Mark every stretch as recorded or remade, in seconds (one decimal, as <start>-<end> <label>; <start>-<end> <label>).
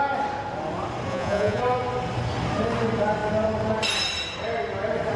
0.0-1.1 recorded; 1.1-1.6 remade; 1.6-5.2 recorded